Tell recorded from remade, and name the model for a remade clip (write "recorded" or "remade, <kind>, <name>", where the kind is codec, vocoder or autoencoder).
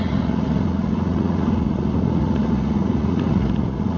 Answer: remade, vocoder, Vocos